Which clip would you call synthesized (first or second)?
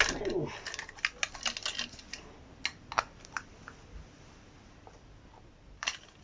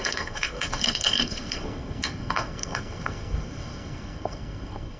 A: second